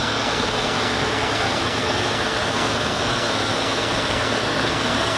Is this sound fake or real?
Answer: fake